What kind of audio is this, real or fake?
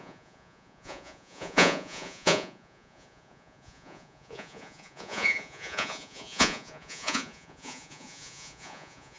fake